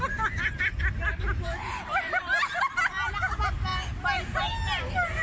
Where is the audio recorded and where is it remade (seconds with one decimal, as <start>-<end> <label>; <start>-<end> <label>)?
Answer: 0.0-1.1 recorded; 1.1-3.2 remade; 3.2-5.2 recorded